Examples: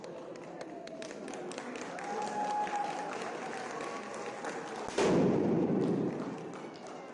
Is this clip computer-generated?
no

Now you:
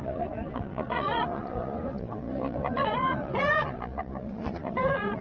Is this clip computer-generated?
yes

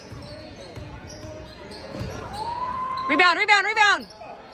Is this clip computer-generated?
yes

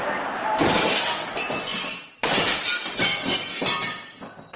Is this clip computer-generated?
no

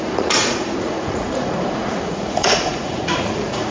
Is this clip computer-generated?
yes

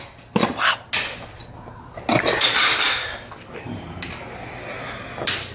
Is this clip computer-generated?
no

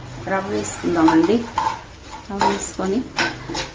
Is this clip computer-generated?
no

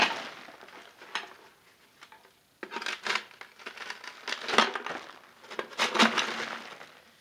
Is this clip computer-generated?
no